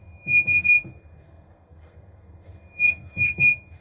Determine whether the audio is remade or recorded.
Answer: remade